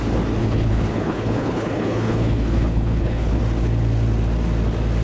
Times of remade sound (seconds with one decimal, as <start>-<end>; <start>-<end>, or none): 0.4-3.4